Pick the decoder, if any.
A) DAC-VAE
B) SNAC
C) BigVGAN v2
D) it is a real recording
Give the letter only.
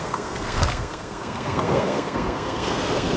B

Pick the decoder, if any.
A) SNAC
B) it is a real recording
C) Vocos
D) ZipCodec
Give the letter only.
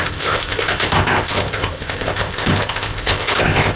D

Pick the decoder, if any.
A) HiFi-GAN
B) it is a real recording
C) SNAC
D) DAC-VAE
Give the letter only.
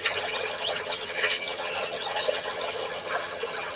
A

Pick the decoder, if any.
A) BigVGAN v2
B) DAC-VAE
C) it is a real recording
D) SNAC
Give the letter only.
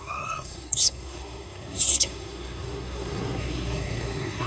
D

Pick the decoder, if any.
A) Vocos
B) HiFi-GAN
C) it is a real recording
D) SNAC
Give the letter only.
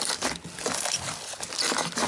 C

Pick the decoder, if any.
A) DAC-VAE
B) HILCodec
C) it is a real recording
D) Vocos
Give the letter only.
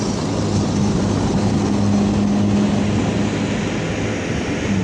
C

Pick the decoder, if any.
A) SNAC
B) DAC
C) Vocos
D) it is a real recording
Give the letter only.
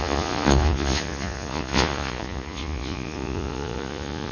C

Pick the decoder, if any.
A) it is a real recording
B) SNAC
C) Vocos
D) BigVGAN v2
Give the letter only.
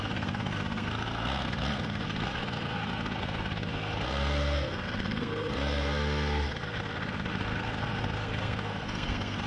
B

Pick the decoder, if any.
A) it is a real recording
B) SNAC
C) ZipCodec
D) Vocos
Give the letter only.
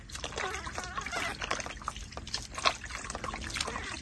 A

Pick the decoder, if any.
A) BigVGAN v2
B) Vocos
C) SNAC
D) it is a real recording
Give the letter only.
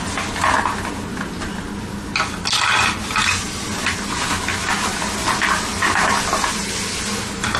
D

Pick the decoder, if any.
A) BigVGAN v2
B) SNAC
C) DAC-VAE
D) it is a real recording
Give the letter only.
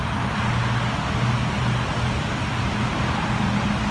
D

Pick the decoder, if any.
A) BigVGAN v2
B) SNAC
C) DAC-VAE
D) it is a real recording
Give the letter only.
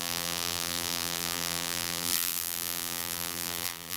A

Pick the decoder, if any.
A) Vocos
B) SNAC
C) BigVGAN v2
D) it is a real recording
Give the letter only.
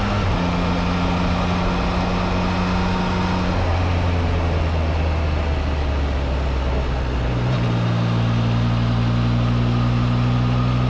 D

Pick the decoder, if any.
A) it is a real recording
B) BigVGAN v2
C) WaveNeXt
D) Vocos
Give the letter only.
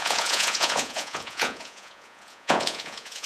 D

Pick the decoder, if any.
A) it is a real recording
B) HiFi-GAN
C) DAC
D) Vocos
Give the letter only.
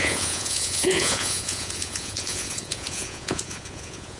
D